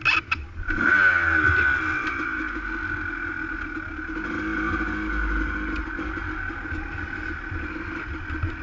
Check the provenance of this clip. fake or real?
real